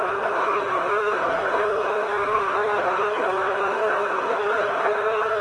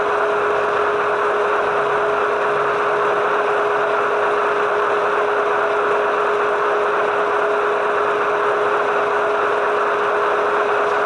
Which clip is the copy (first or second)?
first